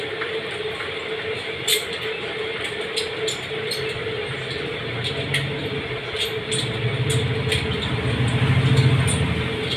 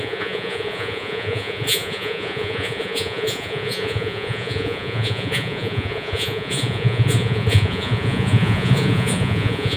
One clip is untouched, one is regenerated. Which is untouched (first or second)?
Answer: first